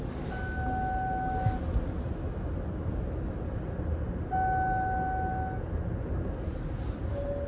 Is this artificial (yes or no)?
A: no